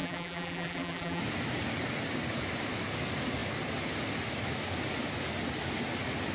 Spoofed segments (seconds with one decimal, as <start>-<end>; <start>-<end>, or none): 0.0-1.2